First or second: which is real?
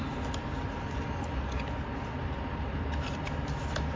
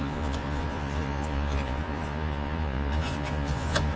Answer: first